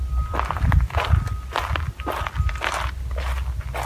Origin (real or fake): real